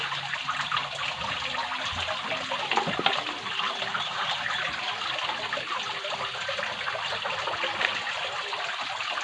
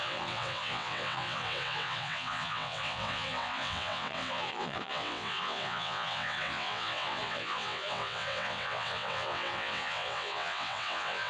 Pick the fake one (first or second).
second